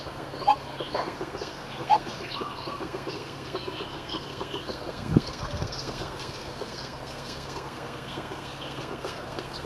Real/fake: fake